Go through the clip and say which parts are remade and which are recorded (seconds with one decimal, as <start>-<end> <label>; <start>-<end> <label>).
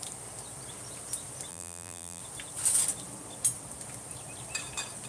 0.0-1.5 recorded; 1.5-2.2 remade; 2.2-5.1 recorded